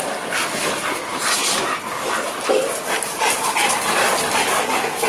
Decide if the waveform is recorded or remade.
recorded